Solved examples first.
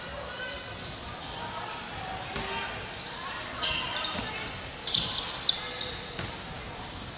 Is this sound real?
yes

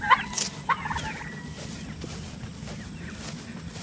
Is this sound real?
yes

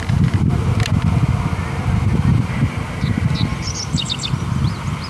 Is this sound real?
yes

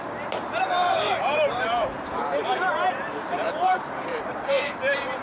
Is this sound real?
no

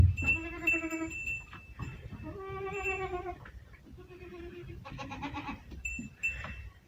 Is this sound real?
no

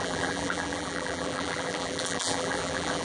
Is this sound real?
no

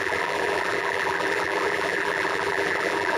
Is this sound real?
no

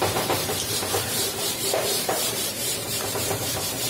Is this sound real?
no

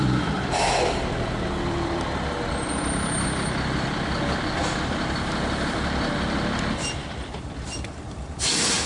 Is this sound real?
no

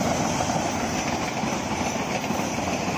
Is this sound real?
yes